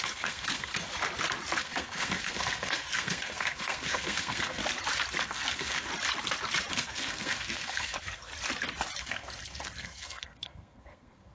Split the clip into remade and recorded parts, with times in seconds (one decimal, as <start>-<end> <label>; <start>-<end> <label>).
0.0-0.9 remade; 0.9-1.6 recorded; 1.6-4.6 remade; 4.6-5.2 recorded; 5.2-5.9 remade; 5.9-6.7 recorded; 6.7-8.3 remade; 8.3-9.0 recorded; 9.0-11.3 remade